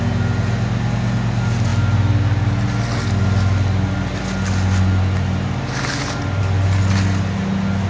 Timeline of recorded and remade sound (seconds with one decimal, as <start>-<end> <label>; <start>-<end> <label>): 0.0-7.9 recorded